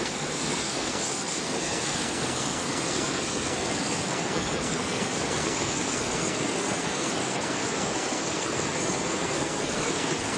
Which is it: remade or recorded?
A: remade